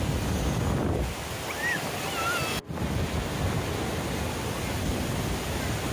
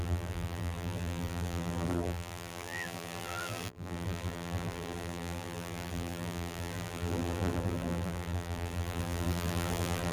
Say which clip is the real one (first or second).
first